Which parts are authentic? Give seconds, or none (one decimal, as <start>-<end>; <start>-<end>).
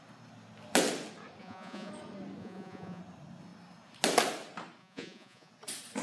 0.0-1.4; 1.9-2.4; 3.0-4.8; 5.5-6.0